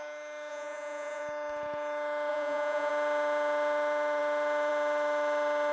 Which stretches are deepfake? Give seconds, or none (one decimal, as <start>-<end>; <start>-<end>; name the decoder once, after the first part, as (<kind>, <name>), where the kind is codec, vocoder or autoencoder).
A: 0.5-1.2 (vocoder, Vocos); 2.3-2.9